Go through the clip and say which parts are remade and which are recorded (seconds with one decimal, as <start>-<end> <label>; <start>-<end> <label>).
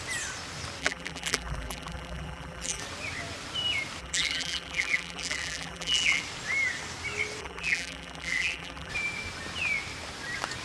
0.0-0.8 recorded; 0.8-2.8 remade; 2.8-4.0 recorded; 4.0-6.2 remade; 6.2-7.4 recorded; 7.4-8.9 remade; 8.9-10.6 recorded